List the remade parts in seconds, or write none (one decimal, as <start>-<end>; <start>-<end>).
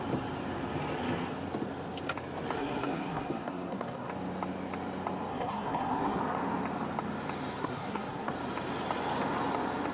2.6-4.1; 5.3-6.2; 7.6-8.3